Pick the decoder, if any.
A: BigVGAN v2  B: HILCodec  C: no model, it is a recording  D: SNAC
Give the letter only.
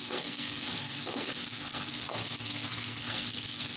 D